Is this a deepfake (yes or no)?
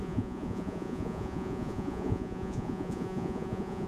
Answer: yes